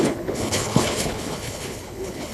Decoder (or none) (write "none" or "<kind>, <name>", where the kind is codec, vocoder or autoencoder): codec, HILCodec